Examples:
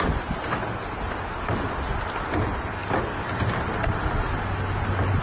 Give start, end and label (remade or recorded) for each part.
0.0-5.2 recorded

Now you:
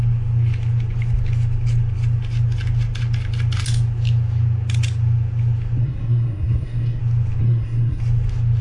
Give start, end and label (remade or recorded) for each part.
0.0-5.8 recorded; 5.8-7.0 remade; 7.0-7.4 recorded; 7.4-8.0 remade; 8.0-8.6 recorded

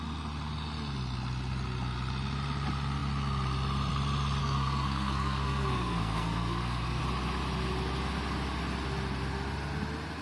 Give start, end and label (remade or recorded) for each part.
0.0-4.4 recorded; 4.4-7.0 remade; 7.0-10.2 recorded

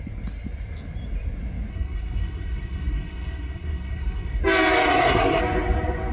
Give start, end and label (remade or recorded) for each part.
0.0-1.7 recorded; 1.7-4.4 remade; 4.4-4.9 recorded; 4.9-5.4 remade; 5.4-6.1 recorded